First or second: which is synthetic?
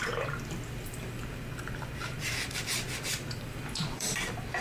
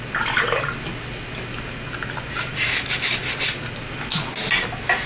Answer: first